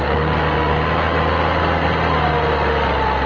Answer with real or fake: real